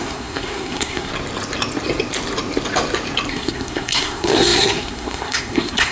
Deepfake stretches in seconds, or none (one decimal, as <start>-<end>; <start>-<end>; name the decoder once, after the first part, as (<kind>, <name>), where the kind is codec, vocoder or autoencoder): 0.0-1.1 (codec, SNAC); 3.3-5.9